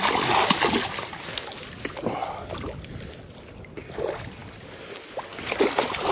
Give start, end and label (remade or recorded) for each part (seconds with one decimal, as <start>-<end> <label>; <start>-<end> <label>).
0.0-6.1 recorded